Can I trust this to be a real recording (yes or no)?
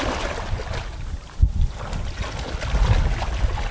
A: yes